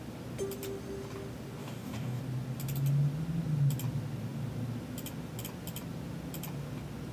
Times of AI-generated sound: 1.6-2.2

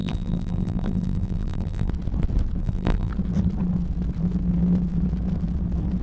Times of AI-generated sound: 0.0-1.9; 2.6-3.1

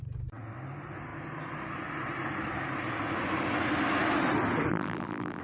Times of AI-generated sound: 4.7-5.4

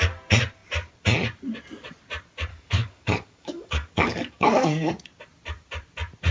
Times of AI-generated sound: 2.5-4.9

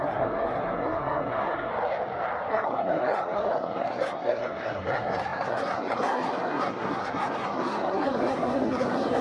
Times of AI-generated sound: 0.0-1.7; 2.5-9.2